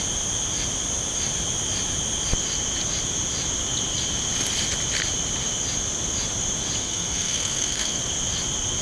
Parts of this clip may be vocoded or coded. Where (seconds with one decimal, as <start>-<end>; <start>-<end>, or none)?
6.8-8.0